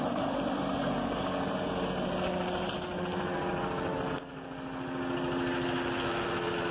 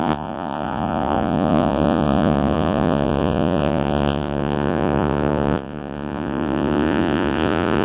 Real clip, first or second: first